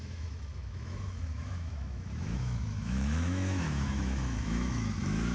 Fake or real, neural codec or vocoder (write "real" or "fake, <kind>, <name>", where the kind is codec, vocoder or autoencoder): fake, autoencoder, DAC-VAE